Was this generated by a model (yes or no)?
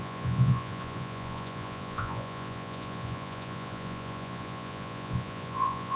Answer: yes